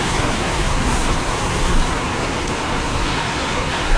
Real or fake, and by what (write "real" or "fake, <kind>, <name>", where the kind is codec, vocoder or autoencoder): fake, codec, SNAC